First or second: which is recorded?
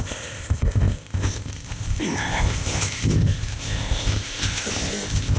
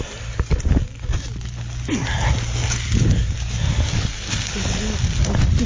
second